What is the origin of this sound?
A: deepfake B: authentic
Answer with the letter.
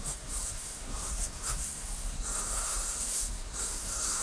A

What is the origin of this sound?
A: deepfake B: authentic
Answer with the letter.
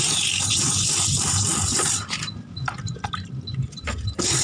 B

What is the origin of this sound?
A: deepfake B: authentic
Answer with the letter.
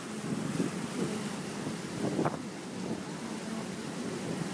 B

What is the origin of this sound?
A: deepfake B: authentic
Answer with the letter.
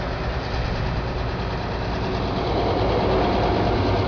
B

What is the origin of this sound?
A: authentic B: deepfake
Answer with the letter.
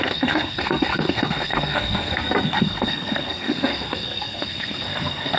B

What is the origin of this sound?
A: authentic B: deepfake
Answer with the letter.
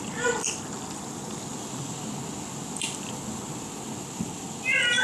A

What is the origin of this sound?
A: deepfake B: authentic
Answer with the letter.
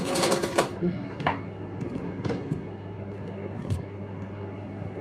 A